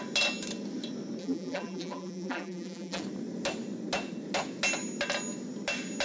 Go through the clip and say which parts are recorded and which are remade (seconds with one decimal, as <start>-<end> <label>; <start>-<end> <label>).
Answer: 0.0-1.2 recorded; 1.2-3.0 remade; 3.0-6.0 recorded